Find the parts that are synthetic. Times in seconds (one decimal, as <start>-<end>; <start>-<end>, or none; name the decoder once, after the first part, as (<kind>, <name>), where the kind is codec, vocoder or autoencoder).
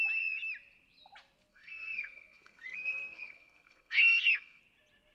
1.5-4.6 (codec, SNAC)